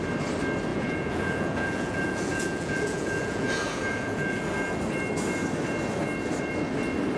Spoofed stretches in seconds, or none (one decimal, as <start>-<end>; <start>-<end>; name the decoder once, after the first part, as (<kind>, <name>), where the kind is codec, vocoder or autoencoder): 0.7-4.4 (vocoder, Vocos)